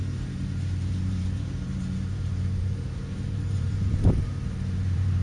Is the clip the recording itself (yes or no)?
no